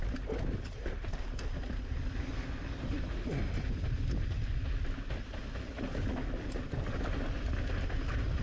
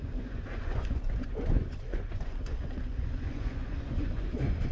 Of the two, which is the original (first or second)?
first